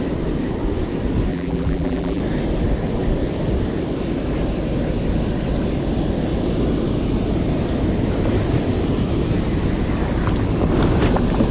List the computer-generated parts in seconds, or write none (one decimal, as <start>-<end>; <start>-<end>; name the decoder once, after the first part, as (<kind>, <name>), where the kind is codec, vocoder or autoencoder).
1.3-2.2 (vocoder, BigVGAN v2)